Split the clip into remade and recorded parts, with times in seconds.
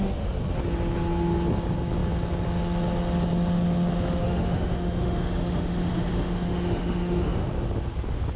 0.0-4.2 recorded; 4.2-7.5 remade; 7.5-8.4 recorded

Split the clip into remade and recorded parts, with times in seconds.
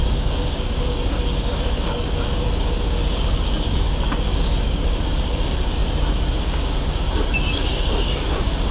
0.0-8.7 remade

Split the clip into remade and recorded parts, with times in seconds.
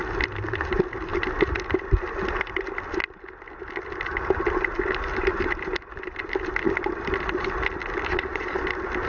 0.0-8.1 recorded; 8.1-8.6 remade; 8.6-9.1 recorded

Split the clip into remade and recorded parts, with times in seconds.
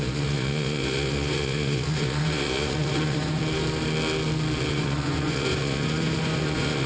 0.0-3.4 remade; 3.4-4.7 recorded; 4.7-6.9 remade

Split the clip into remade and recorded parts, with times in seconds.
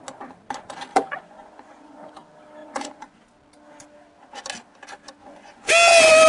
0.0-0.9 recorded; 0.9-2.1 remade; 2.1-2.6 recorded; 2.6-3.2 remade; 3.2-5.2 recorded; 5.2-5.7 remade; 5.7-6.3 recorded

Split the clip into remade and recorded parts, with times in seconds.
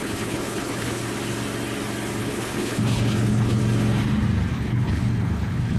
0.0-1.0 remade; 1.0-2.2 recorded; 2.2-3.6 remade; 3.6-4.5 recorded; 4.5-5.8 remade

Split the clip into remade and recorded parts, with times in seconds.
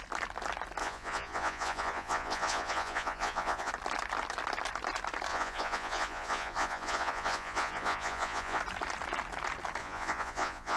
0.0-0.8 recorded; 0.8-3.7 remade; 3.7-5.3 recorded; 5.3-8.6 remade; 8.6-9.8 recorded; 9.8-10.8 remade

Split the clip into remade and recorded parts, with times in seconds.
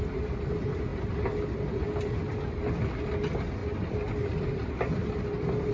0.0-5.7 recorded